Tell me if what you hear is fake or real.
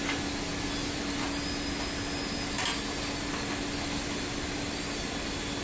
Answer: real